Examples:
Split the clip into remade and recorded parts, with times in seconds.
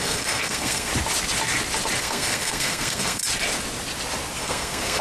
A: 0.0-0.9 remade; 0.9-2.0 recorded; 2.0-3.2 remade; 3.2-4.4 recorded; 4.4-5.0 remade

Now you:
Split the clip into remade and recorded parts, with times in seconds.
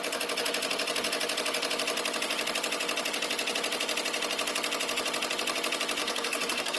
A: 0.0-6.0 recorded; 6.0-6.8 remade